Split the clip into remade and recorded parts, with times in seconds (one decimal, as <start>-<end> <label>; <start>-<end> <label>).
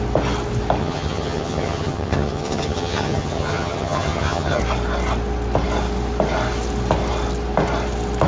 0.0-0.8 recorded; 0.8-4.6 remade; 4.6-8.3 recorded